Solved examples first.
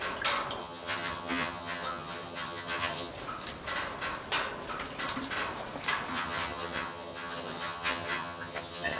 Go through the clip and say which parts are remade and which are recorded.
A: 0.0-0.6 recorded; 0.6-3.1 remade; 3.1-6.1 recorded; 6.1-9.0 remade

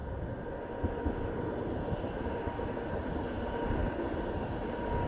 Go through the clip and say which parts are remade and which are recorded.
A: 0.0-5.1 recorded

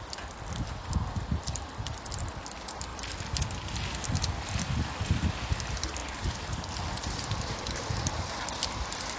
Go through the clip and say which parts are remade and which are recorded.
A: 0.0-9.2 recorded

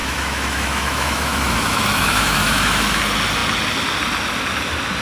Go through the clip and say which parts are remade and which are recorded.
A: 0.0-3.0 remade; 3.0-5.0 recorded

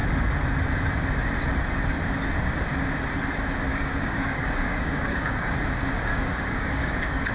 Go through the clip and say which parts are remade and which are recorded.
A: 0.0-3.7 recorded; 3.7-5.5 remade; 5.5-6.1 recorded; 6.1-7.3 remade

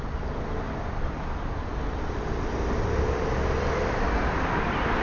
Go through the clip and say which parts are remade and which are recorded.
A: 0.0-5.0 recorded

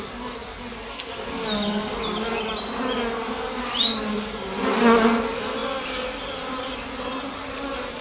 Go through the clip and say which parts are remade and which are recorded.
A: 0.0-8.0 recorded

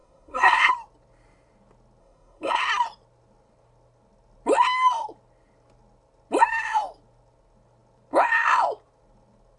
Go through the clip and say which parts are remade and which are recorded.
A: 0.0-0.7 remade; 0.7-2.0 recorded; 2.0-2.6 remade; 2.6-9.6 recorded